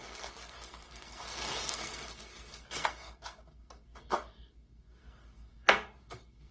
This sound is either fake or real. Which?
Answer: fake